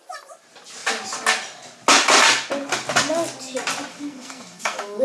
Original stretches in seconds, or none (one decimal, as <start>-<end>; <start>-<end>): 0.0-3.9